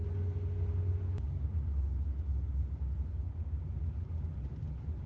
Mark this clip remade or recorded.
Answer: recorded